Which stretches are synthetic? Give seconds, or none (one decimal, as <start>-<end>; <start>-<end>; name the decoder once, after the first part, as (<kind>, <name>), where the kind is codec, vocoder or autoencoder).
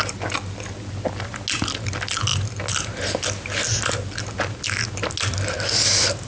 none